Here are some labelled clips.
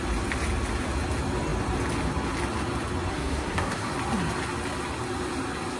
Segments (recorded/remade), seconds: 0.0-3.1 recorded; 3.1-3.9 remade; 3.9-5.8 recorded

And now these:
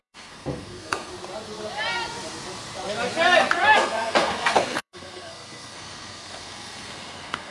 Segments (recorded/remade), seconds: 0.0-1.1 remade; 1.1-3.5 recorded; 3.5-7.5 remade

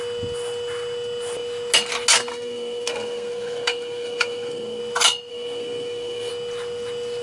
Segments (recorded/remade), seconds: 0.0-2.3 recorded; 2.3-4.8 remade; 4.8-5.3 recorded; 5.3-6.3 remade; 6.3-7.2 recorded

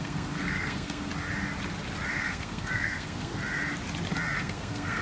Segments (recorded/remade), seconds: 0.0-1.1 remade; 1.1-2.1 recorded; 2.1-3.3 remade; 3.3-4.4 recorded; 4.4-5.0 remade